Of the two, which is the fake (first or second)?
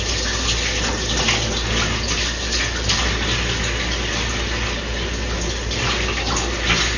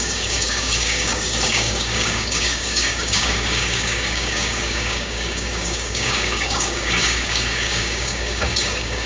second